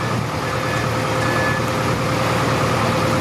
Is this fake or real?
real